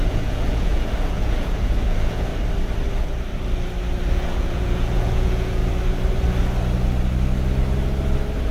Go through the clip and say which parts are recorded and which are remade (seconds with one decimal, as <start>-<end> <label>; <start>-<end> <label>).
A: 0.0-2.3 remade; 2.3-4.1 recorded; 4.1-5.6 remade; 5.6-8.5 recorded